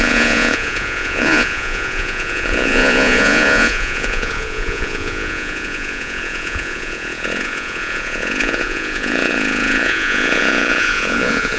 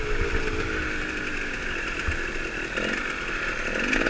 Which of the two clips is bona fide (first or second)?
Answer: second